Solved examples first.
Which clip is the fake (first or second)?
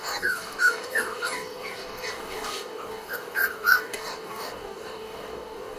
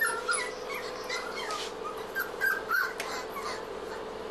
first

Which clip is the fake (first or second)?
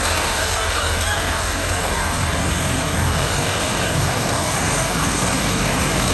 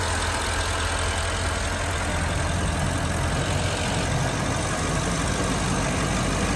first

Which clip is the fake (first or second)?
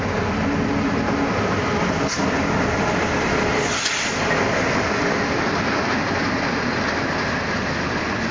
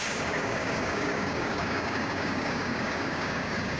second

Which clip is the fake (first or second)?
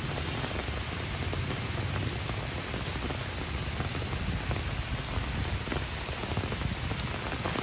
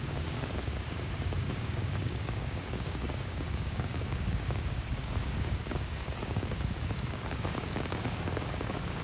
second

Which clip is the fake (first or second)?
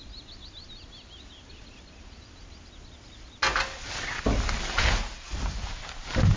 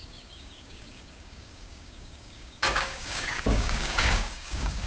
second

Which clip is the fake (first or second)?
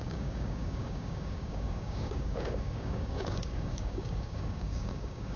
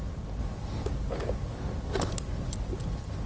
first